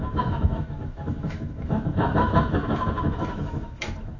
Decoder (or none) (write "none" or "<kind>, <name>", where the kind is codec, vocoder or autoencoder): autoencoder, DAC-VAE